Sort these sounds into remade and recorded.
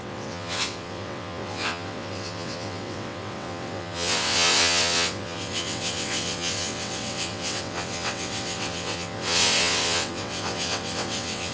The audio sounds remade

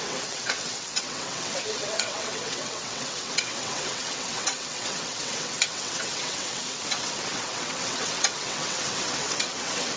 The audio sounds remade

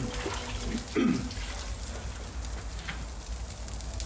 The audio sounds recorded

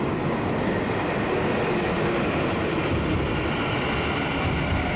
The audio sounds recorded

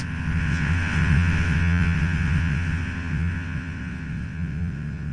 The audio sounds remade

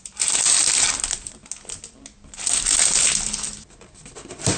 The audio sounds recorded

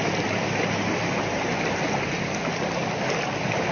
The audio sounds recorded